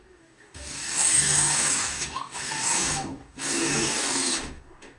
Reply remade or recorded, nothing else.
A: remade